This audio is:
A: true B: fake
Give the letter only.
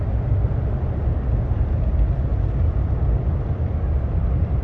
A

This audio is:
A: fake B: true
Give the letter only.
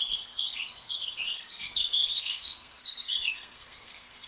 A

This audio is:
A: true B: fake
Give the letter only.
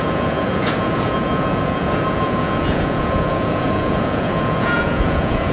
B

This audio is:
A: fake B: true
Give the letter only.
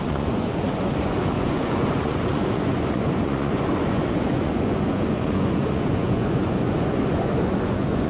A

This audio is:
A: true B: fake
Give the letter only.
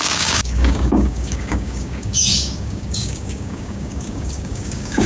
B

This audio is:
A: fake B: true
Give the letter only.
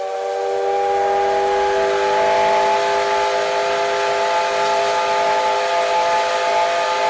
B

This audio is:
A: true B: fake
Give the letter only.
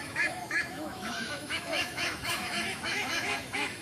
B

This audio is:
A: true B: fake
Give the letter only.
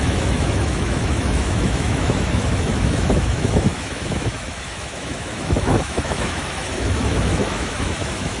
B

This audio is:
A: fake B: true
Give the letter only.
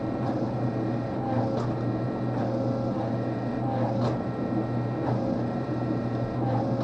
B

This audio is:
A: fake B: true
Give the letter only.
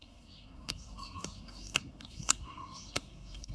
A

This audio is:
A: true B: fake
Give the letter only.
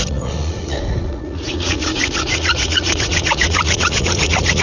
B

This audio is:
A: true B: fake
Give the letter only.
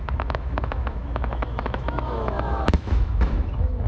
B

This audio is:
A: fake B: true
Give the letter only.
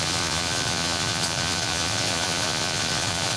A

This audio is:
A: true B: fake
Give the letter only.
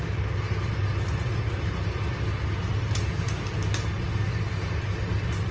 A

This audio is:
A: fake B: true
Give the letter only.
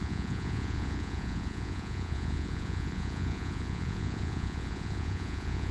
A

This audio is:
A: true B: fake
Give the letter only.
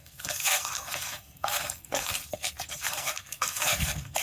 B